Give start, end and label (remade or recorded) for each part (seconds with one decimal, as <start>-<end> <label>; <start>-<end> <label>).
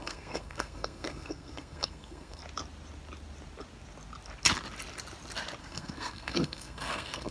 0.0-2.4 remade; 2.4-5.6 recorded; 5.6-7.3 remade